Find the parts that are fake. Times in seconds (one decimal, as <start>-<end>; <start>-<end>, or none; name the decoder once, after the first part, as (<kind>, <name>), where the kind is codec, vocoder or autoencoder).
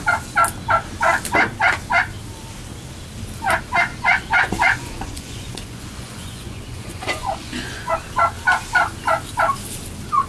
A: 3.9-7.9 (vocoder, Vocos)